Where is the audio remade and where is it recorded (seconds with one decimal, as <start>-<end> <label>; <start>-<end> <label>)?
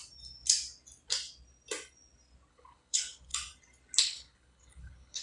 0.0-2.5 recorded; 2.5-3.3 remade; 3.3-4.0 recorded; 4.0-5.2 remade